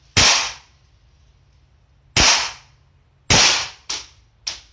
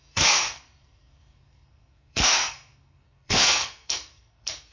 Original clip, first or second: first